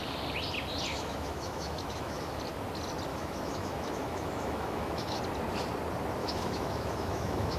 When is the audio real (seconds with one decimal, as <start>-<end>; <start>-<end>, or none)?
0.0-0.9; 2.4-3.1; 5.2-6.2